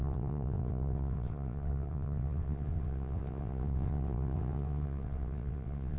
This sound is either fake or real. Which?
fake